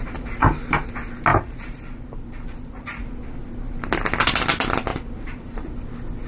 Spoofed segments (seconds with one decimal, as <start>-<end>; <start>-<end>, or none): 1.3-3.0; 4.9-5.6